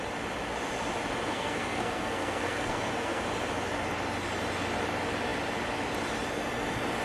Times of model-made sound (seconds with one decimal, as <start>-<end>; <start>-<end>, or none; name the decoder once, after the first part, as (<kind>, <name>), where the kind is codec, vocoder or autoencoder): 1.3-3.2 (codec, SNAC)